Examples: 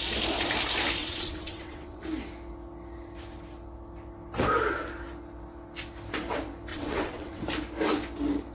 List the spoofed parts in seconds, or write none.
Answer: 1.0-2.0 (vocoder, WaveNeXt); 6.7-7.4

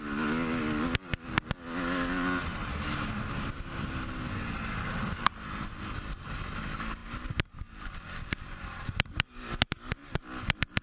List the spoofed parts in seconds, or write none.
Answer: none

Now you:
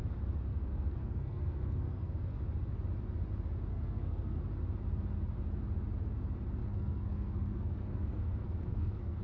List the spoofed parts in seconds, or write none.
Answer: 0.5-2.4 (codec, SNAC); 3.7-4.4; 6.6-9.2

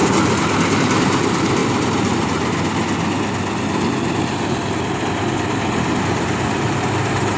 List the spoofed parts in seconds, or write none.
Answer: 0.8-1.6 (vocoder, BigVGAN v2); 6.0-7.4

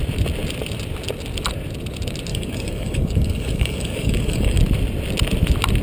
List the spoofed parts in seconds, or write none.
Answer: 2.3-4.6 (codec, DAC)